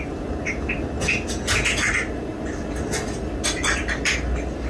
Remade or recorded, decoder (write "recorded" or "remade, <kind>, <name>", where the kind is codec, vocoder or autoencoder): recorded